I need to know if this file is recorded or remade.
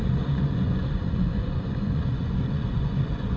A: remade